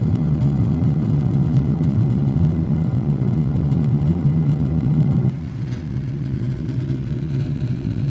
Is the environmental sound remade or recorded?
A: remade